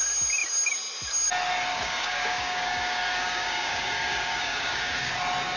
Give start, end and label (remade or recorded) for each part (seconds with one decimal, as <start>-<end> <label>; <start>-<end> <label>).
0.0-1.7 recorded; 1.7-5.1 remade; 5.1-5.6 recorded